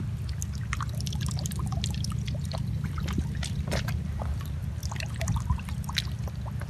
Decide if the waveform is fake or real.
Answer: real